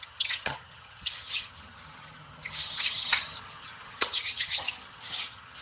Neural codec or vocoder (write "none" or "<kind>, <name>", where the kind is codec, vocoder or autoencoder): vocoder, HiFi-GAN